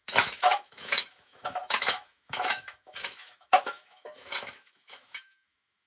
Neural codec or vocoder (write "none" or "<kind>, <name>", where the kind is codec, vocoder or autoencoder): autoencoder, DAC-VAE